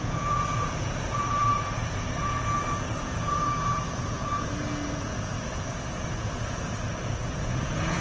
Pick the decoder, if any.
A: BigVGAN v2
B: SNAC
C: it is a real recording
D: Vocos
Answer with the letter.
D